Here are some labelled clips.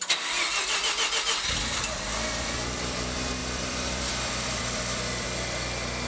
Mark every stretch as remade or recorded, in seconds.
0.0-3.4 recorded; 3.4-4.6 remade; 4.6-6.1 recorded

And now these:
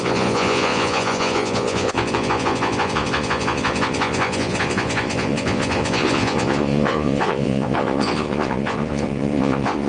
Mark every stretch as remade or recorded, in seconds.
0.0-9.9 remade

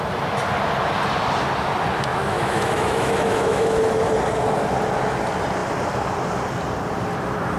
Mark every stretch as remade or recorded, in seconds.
0.0-2.1 recorded; 2.1-3.8 remade; 3.8-7.6 recorded